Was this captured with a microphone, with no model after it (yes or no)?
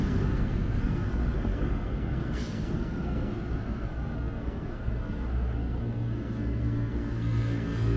no